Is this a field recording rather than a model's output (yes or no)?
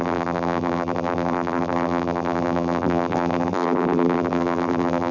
no